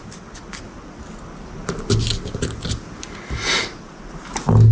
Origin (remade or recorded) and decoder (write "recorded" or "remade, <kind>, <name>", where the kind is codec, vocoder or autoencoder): recorded